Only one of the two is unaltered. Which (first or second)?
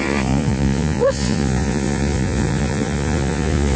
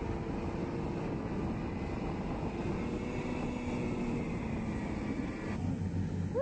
second